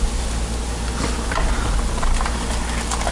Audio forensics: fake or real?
real